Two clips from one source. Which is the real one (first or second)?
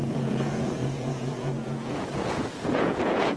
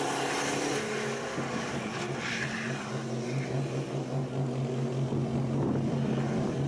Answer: second